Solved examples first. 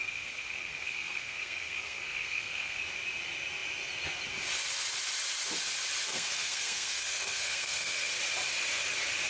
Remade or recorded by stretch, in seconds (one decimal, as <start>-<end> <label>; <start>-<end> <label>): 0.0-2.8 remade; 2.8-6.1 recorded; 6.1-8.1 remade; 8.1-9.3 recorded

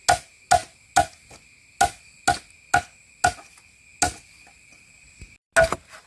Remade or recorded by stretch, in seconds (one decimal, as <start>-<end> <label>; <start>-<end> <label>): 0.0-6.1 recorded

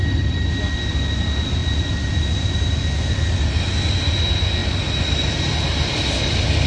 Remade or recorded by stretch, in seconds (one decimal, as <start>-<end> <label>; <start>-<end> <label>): 0.0-6.7 recorded

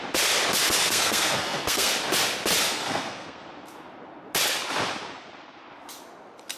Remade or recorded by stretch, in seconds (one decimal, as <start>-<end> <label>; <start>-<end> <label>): 0.0-0.8 recorded; 0.8-1.9 remade; 1.9-2.6 recorded; 2.6-3.4 remade; 3.4-6.6 recorded

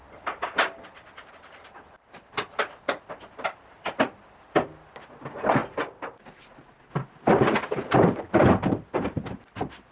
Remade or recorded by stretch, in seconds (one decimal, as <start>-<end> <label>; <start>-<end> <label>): 0.0-9.9 recorded